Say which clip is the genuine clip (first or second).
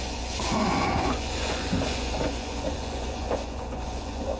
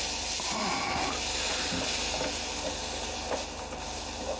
second